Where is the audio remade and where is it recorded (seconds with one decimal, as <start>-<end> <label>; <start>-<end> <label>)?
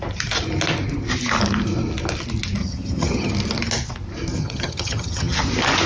0.0-2.6 recorded; 2.6-3.3 remade; 3.3-4.4 recorded; 4.4-5.4 remade; 5.4-5.9 recorded